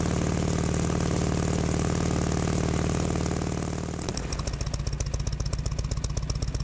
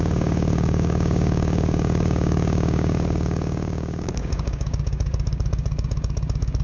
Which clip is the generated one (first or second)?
second